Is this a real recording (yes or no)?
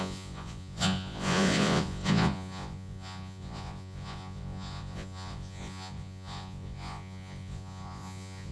no